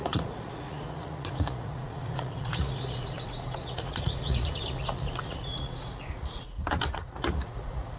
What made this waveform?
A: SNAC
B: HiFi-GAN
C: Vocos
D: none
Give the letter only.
C